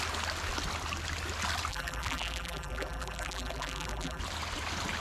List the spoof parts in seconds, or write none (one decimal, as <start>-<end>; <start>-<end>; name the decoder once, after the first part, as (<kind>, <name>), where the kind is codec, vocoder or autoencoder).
1.7-4.2 (vocoder, BigVGAN v2)